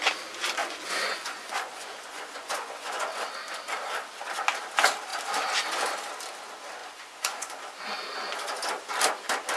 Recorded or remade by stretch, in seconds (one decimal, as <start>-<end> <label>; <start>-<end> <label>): 0.0-0.6 recorded; 0.6-3.2 remade; 3.2-6.8 recorded; 6.8-7.6 remade; 7.6-9.6 recorded